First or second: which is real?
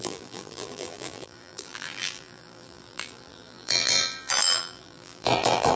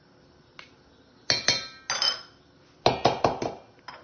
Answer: second